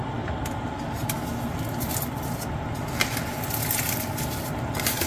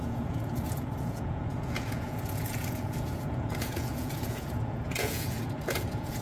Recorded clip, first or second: first